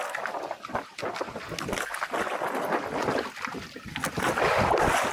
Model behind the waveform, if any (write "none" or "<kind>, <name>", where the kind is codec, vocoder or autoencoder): none